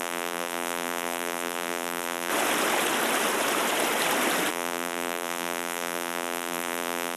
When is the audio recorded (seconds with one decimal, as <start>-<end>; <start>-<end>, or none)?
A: 2.3-4.5